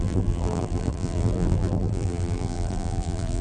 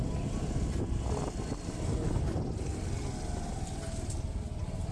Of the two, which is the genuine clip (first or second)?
second